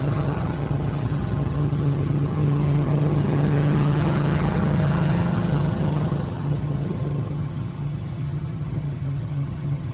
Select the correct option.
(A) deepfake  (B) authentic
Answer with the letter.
A